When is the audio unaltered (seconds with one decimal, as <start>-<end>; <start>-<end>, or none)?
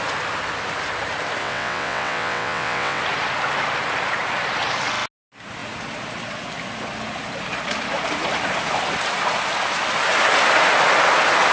0.0-1.4; 3.0-11.5